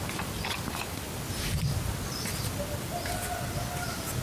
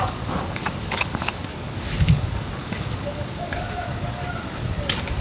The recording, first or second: first